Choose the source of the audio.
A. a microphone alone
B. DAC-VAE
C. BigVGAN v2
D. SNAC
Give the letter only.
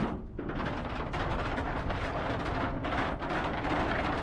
A